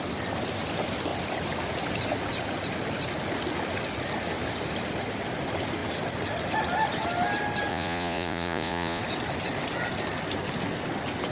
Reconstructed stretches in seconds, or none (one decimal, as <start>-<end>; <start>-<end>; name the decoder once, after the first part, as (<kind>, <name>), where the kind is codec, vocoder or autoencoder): 7.7-9.0 (vocoder, Vocos)